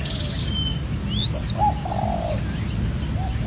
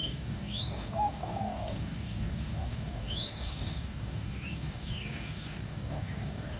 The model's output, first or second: second